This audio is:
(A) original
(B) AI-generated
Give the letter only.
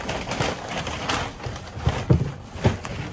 A